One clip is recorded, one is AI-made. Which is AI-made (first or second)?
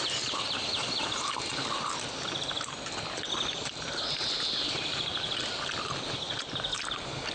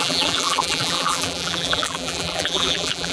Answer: second